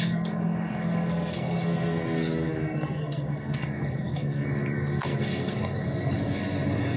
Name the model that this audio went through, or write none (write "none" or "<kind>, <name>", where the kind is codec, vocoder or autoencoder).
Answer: codec, SNAC